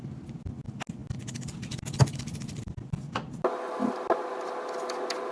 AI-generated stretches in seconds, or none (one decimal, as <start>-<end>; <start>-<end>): none